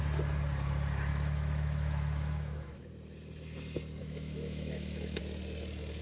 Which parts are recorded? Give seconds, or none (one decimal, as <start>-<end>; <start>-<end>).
0.0-1.1; 2.9-4.0; 5.2-6.0